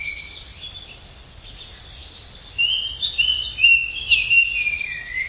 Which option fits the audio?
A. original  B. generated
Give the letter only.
A